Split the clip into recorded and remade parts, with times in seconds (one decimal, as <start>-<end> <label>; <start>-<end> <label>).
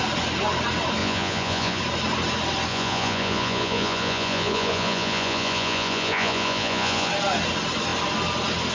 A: 0.0-1.0 recorded; 1.0-1.8 remade; 1.8-2.7 recorded; 2.7-7.1 remade; 7.1-8.7 recorded